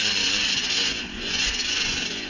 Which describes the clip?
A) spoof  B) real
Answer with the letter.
A